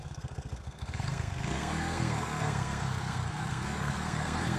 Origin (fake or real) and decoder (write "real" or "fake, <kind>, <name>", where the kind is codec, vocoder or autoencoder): fake, codec, SNAC